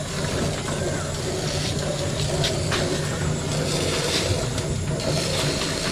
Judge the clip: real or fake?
real